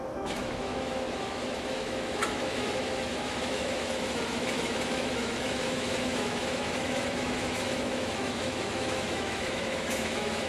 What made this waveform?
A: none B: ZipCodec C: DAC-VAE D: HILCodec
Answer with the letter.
C